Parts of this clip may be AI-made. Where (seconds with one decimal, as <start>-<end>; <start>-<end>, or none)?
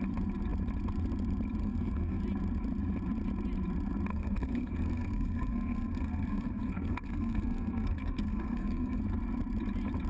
1.6-2.2; 4.1-9.0